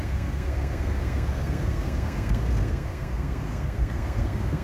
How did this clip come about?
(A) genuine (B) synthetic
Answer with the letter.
B